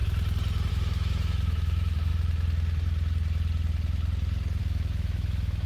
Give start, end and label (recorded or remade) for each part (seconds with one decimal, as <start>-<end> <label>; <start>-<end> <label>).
0.0-0.7 recorded; 0.7-2.1 remade; 2.1-4.6 recorded; 4.6-5.7 remade